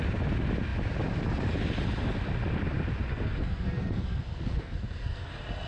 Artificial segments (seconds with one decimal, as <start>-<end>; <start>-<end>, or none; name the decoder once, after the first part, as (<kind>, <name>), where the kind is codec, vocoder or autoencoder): 3.1-5.3 (codec, SNAC)